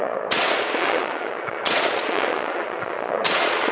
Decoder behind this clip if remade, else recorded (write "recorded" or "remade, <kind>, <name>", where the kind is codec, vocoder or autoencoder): remade, vocoder, Vocos